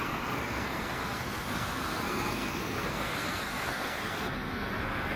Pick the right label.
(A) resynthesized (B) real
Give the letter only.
A